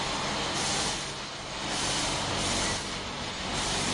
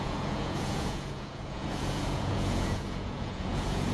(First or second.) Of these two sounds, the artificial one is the second